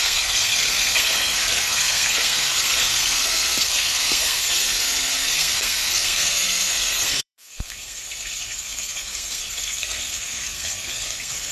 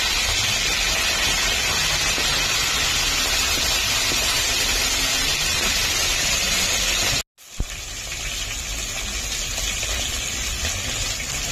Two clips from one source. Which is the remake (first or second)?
first